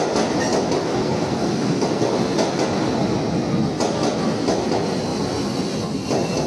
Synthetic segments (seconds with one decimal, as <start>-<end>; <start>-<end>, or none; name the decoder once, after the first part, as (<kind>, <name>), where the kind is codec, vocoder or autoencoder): 1.0-2.1 (codec, SNAC)